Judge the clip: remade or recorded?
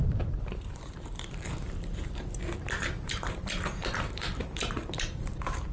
remade